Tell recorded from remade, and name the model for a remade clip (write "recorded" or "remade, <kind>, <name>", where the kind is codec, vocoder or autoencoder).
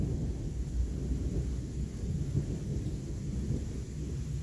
recorded